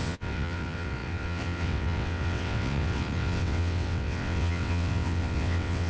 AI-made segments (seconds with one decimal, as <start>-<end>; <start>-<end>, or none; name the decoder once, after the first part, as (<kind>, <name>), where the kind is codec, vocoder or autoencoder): 0.0-5.9 (vocoder, WaveNeXt)